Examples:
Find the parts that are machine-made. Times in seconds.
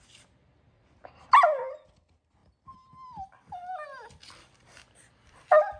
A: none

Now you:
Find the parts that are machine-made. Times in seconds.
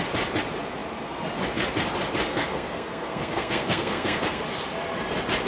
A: 2.3-4.4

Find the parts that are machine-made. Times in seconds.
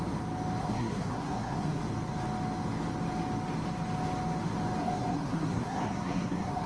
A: 0.6-1.8; 4.8-6.7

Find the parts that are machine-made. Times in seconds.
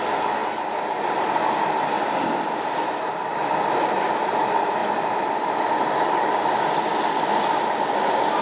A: none